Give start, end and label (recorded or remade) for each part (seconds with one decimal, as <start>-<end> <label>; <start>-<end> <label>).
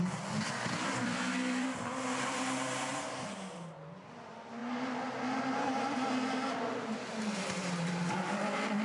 0.0-2.9 remade; 2.9-4.0 recorded; 4.0-8.8 remade